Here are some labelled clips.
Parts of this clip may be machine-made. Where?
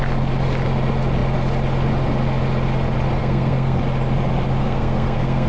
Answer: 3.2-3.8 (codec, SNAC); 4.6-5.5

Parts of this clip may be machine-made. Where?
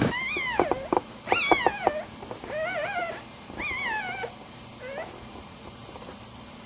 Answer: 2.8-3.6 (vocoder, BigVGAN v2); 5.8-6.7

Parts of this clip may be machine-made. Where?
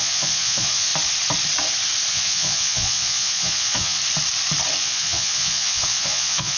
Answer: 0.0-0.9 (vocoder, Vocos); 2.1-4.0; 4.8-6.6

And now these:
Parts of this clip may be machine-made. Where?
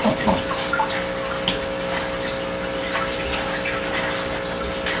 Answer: none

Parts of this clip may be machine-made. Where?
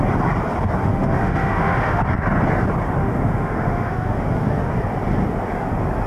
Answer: 0.8-2.0 (autoencoder, DAC-VAE); 3.0-4.7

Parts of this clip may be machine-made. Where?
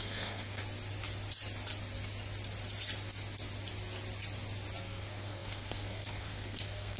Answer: 0.0-0.6 (codec, SNAC); 4.8-7.0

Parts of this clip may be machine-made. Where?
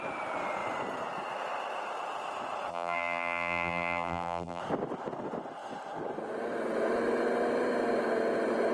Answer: 2.7-4.6 (vocoder, BigVGAN v2)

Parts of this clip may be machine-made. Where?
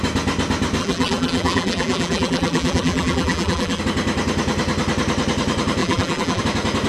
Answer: 0.8-3.8 (vocoder, BigVGAN v2); 5.8-6.4